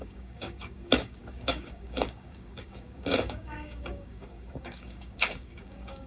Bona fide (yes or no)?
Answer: no